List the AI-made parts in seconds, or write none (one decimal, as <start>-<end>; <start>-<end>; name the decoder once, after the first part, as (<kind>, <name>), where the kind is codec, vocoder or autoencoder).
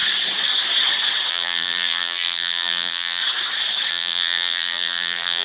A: 1.3-3.2 (vocoder, BigVGAN v2); 3.9-5.4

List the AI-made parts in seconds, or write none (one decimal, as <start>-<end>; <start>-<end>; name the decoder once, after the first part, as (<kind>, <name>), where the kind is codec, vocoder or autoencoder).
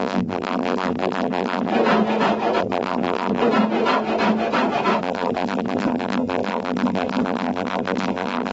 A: 0.0-1.7 (vocoder, BigVGAN v2); 2.6-3.4; 5.0-8.5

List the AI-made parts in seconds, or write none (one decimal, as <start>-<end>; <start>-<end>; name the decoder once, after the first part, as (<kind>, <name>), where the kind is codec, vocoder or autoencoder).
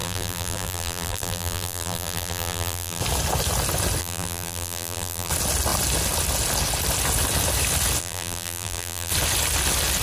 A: 0.0-3.0 (vocoder, BigVGAN v2); 4.0-5.3; 8.0-9.1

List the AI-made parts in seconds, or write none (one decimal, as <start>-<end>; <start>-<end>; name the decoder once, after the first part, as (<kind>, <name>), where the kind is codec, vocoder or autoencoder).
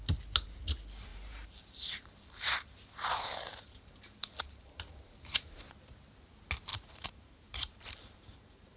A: 1.1-5.6 (vocoder, BigVGAN v2); 6.7-8.8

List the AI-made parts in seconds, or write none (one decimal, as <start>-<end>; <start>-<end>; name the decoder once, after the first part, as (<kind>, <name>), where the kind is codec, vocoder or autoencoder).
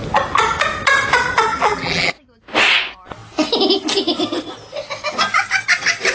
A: 1.5-2.1 (vocoder, BigVGAN v2)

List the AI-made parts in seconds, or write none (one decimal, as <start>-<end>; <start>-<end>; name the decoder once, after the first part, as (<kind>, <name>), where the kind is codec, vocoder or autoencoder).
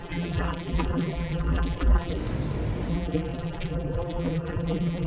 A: 0.0-2.2 (vocoder, BigVGAN v2); 2.9-5.1